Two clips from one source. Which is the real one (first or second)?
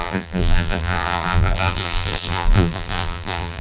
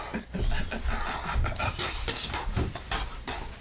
second